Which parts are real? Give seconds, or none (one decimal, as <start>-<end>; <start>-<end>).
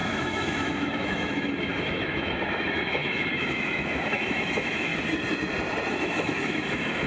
4.9-5.9